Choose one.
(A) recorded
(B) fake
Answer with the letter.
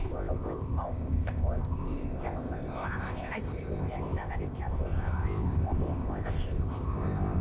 B